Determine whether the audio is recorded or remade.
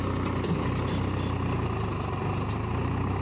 recorded